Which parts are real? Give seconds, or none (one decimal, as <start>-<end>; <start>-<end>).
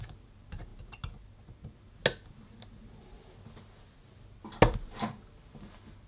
0.0-6.1